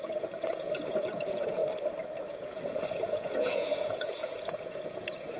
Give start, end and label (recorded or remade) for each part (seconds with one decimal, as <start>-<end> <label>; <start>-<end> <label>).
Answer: 0.0-1.6 remade; 1.6-2.3 recorded; 2.3-5.4 remade